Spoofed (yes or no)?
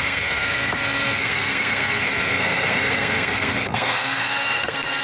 yes